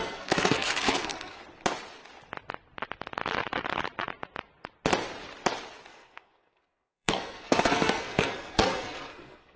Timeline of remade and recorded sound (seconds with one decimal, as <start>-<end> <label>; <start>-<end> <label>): 0.0-1.4 remade; 1.4-5.9 recorded; 5.9-9.6 remade